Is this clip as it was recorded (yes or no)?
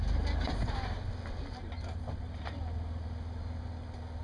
yes